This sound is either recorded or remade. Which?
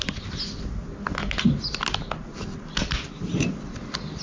recorded